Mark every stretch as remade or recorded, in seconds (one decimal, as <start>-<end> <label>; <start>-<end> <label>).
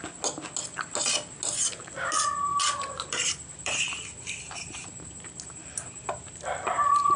0.0-2.5 recorded; 2.5-6.8 remade; 6.8-7.2 recorded